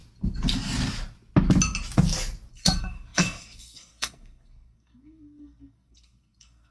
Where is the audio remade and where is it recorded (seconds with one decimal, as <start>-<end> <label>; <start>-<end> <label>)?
0.0-2.5 recorded; 2.5-6.7 remade